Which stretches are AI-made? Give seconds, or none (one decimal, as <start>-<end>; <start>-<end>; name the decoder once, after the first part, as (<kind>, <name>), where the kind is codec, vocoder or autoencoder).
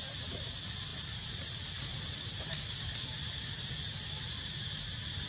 none